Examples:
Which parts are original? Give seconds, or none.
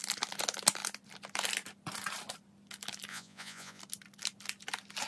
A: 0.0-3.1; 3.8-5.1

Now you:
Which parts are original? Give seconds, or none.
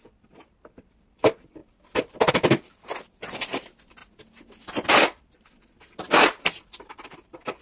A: 4.0-5.0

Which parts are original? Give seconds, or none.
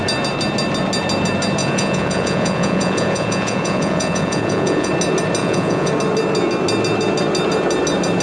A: 0.0-1.6; 4.9-5.4; 5.9-8.2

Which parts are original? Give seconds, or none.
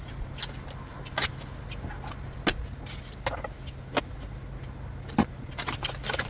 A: 0.0-6.3